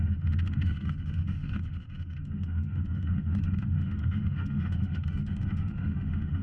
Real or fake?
fake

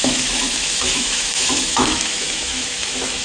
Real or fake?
fake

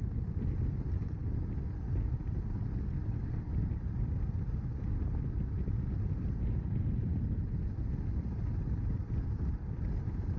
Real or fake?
real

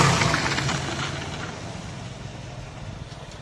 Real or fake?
real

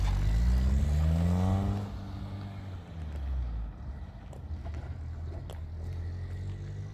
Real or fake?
real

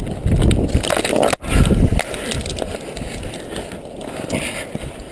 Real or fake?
real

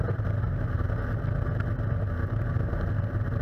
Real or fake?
real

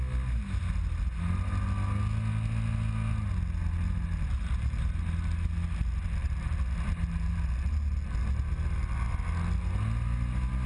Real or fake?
real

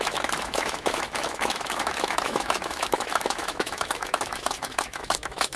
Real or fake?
fake